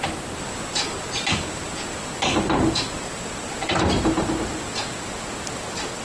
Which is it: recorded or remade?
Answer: recorded